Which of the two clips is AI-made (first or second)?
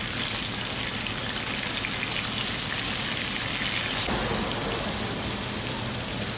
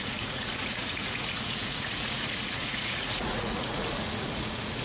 second